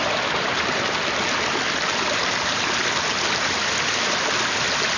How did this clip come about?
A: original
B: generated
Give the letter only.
A